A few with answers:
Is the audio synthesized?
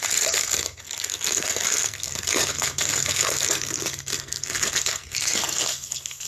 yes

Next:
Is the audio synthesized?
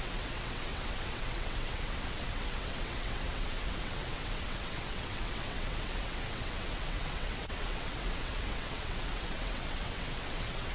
yes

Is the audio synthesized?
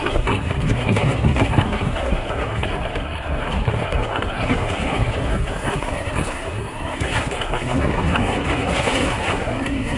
yes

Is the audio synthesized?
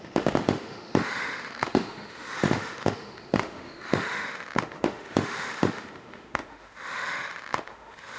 yes